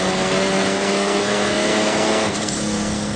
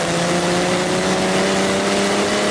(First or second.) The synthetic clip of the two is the first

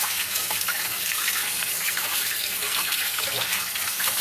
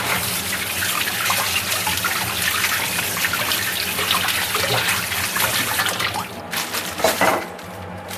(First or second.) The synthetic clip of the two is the first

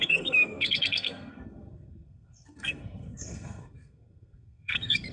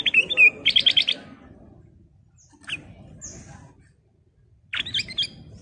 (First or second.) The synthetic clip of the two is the first